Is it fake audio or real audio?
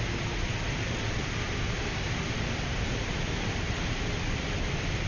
real